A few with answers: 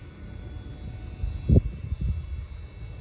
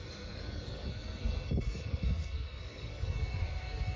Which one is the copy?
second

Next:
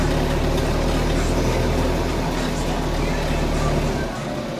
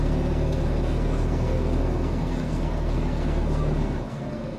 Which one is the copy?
second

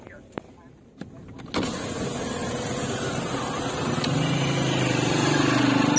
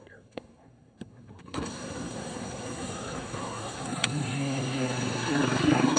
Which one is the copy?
second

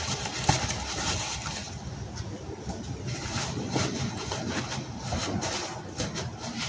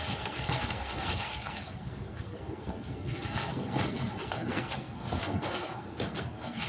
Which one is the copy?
second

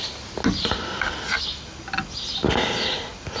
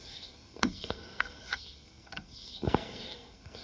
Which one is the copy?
second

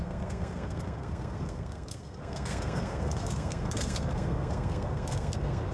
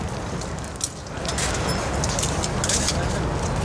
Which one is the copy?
first